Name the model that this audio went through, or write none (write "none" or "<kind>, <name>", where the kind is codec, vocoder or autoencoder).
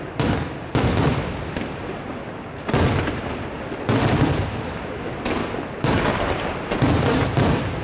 none